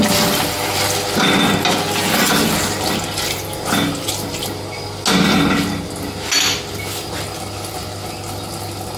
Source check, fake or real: real